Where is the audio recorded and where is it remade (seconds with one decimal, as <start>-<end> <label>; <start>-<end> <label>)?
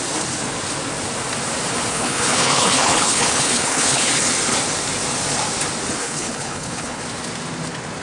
0.0-1.9 recorded; 1.9-4.1 remade; 4.1-6.0 recorded; 6.0-7.0 remade; 7.0-8.0 recorded